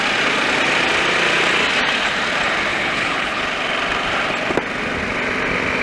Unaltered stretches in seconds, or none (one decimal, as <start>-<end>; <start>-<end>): 0.0-2.7; 3.4-5.8